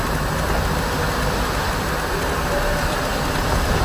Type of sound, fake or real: real